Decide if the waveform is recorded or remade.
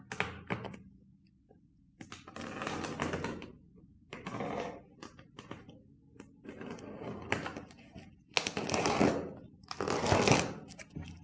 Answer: recorded